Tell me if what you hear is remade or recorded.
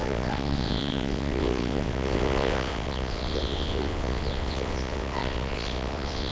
remade